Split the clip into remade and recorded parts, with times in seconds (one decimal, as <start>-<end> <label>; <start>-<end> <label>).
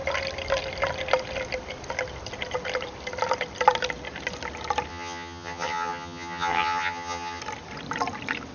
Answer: 0.0-4.9 recorded; 4.9-7.4 remade; 7.4-8.5 recorded